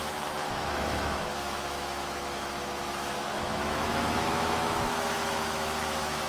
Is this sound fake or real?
fake